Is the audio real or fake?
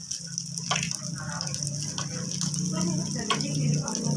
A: real